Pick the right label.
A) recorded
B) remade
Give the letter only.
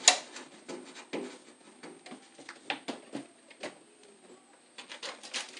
A